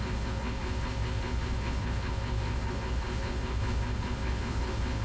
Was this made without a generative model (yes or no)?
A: no